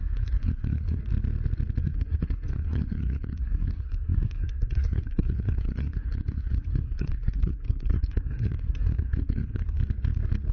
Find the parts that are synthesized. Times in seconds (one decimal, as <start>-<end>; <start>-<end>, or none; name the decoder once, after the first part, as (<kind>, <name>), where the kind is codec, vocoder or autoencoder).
0.0-1.0 (codec, SNAC); 1.8-9.8